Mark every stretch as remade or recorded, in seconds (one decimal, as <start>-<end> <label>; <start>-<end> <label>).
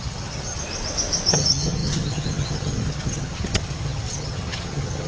0.0-0.6 remade; 0.6-1.3 recorded; 1.3-5.1 remade